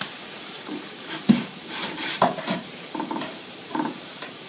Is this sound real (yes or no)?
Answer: no